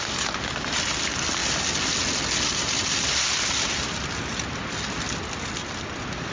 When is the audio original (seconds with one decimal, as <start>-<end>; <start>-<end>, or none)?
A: 0.0-6.3